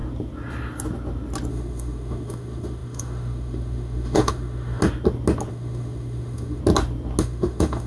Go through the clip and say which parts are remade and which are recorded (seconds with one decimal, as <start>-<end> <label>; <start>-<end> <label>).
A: 0.0-1.5 recorded; 1.5-4.8 remade; 4.8-5.5 recorded; 5.5-6.6 remade; 6.6-7.2 recorded; 7.2-7.9 remade